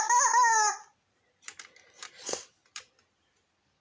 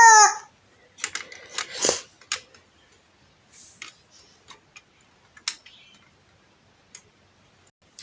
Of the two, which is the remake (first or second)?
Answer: first